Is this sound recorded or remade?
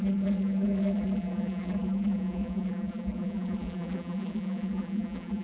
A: remade